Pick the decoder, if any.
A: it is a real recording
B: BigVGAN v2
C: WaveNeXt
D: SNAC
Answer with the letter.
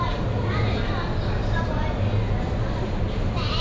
A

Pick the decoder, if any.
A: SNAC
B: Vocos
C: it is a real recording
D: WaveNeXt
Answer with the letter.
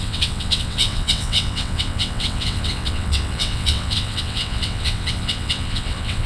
D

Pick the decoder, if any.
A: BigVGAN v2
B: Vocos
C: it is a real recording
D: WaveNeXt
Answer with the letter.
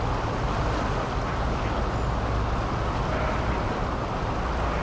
C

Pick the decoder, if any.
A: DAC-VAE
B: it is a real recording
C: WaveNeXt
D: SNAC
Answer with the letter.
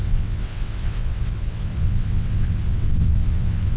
C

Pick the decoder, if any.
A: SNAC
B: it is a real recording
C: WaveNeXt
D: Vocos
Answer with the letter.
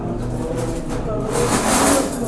B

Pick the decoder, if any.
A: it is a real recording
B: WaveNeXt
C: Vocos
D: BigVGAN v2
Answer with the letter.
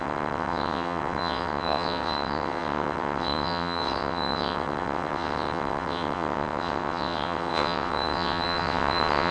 B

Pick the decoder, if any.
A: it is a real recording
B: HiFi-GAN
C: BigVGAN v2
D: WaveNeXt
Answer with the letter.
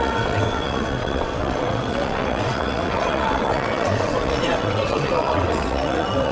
D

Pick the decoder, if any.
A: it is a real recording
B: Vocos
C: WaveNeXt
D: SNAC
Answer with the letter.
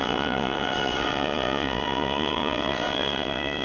C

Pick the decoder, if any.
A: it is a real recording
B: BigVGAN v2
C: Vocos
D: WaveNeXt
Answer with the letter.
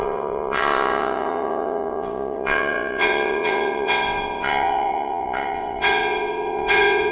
D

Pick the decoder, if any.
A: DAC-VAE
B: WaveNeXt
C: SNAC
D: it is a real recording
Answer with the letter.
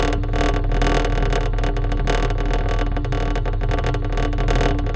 D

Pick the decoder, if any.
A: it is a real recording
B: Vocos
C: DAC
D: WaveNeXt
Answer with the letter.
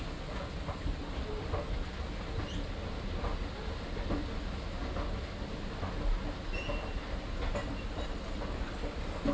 A